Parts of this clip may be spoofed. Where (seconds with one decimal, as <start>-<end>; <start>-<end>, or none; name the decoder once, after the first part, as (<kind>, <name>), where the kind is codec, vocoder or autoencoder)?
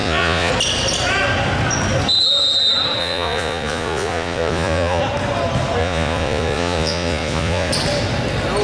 0.0-0.5 (vocoder, Vocos); 3.0-5.0; 5.8-7.7